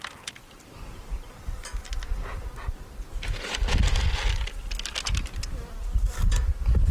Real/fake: real